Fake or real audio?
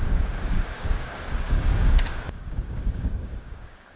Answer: fake